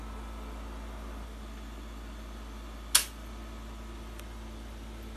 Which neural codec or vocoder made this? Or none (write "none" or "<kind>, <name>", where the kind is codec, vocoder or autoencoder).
none